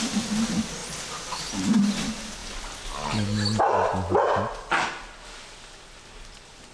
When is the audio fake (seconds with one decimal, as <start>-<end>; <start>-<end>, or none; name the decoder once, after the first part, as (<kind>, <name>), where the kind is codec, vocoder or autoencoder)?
none